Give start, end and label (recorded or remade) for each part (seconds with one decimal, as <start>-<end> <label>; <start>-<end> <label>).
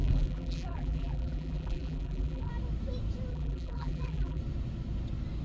0.0-2.5 remade; 2.5-3.3 recorded; 3.3-4.4 remade; 4.4-5.4 recorded